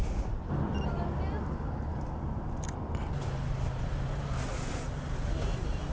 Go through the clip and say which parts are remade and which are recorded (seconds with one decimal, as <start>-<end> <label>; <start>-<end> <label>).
0.0-5.9 recorded